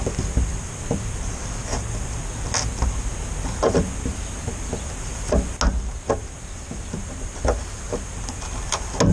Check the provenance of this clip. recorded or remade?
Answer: recorded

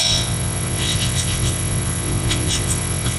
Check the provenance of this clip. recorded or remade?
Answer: remade